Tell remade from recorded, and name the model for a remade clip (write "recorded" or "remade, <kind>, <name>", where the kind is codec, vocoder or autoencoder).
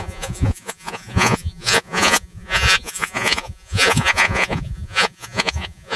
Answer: remade, vocoder, Vocos